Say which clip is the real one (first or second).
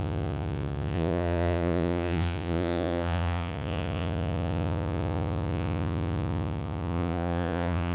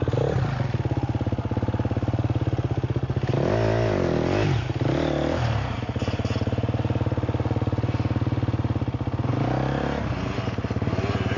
second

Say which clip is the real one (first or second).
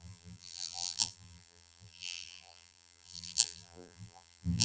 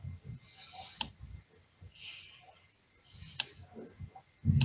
second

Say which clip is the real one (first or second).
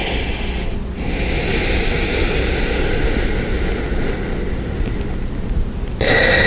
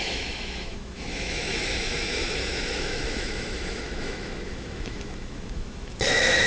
first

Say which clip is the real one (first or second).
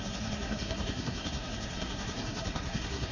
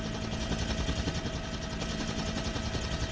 second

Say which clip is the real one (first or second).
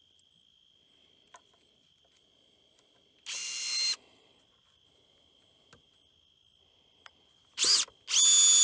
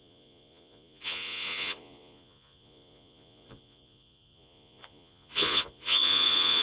first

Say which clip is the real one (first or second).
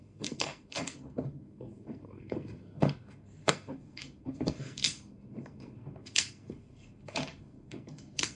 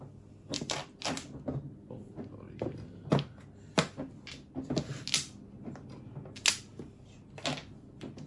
second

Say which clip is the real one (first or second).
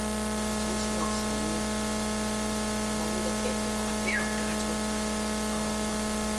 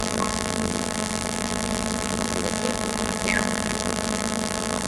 first